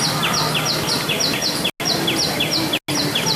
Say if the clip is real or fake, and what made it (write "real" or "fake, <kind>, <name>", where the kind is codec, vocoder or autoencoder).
real